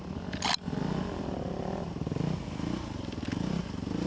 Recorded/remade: recorded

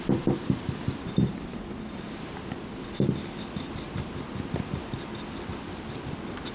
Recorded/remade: recorded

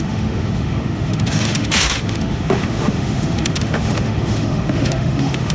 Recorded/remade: remade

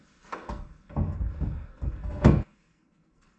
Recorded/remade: remade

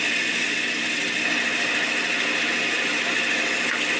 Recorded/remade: recorded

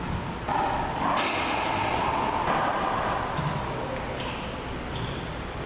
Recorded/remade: recorded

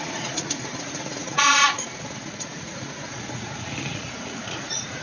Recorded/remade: remade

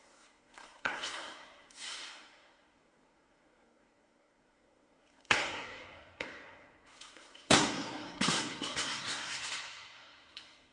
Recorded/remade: remade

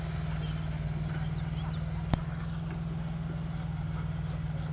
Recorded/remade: recorded